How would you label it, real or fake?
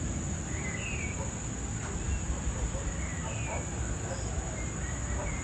real